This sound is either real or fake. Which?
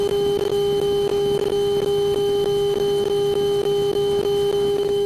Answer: fake